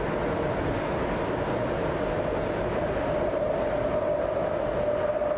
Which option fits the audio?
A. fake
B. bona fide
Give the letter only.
B